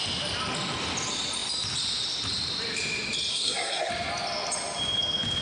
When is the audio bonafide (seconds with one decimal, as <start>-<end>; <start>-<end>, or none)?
0.0-3.3; 3.9-5.4